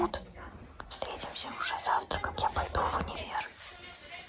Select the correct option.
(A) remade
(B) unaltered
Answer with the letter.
B